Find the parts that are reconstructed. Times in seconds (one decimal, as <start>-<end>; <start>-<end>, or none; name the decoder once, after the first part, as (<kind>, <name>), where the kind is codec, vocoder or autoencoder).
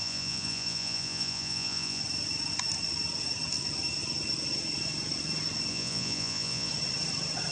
0.0-2.0 (vocoder, Vocos); 5.7-6.7